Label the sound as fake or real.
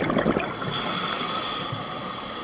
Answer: real